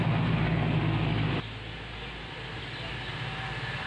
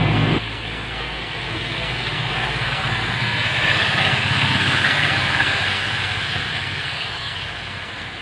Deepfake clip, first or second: second